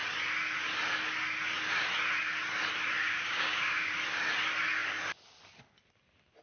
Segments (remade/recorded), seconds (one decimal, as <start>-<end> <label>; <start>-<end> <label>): 0.0-3.0 recorded; 3.0-3.9 remade; 3.9-6.4 recorded